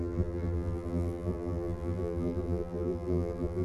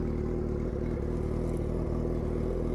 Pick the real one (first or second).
second